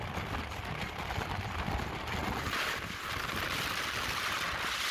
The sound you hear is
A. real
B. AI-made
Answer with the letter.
A